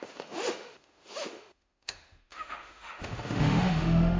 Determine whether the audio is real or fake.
fake